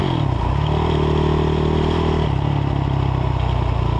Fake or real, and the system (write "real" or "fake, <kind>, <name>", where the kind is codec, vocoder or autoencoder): real